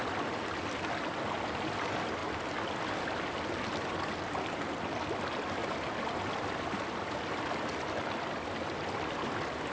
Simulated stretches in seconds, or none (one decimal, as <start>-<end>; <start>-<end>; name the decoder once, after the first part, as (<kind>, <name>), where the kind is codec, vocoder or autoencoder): none